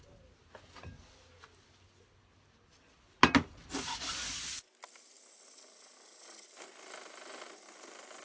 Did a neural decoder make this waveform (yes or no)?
no